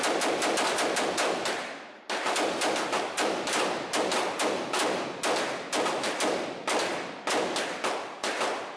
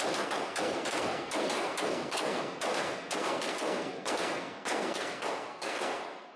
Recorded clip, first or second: first